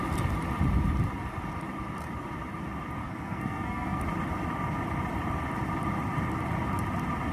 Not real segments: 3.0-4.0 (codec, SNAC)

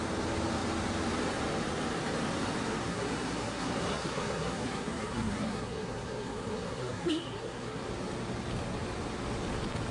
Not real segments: 2.8-7.8 (codec, SNAC)

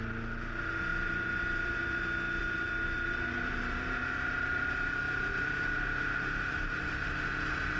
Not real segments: 0.9-2.0 (vocoder, BigVGAN v2); 2.4-6.9

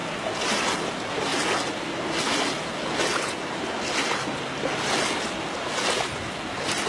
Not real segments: none

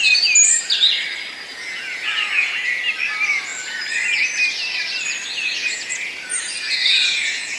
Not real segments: 1.5-2.8 (vocoder, Vocos); 5.6-7.6

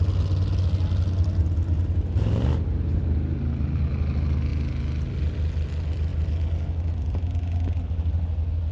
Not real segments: none

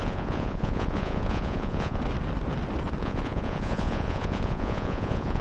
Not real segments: 0.0-2.0 (vocoder, Vocos); 3.0-5.4